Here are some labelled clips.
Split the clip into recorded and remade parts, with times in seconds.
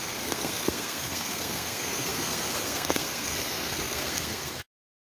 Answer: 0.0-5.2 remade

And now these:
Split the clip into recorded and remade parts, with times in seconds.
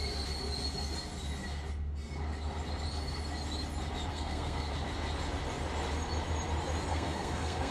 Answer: 0.0-4.1 recorded; 4.1-4.7 remade; 4.7-6.9 recorded; 6.9-7.7 remade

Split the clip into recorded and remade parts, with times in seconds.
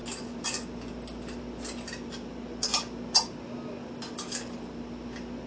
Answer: 0.0-5.5 recorded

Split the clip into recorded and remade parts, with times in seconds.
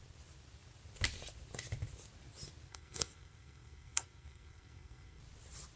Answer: 0.0-2.7 recorded; 2.7-5.2 remade; 5.2-5.8 recorded